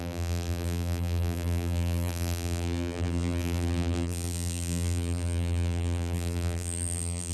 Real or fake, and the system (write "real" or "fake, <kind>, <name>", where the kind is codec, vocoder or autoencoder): fake, vocoder, BigVGAN v2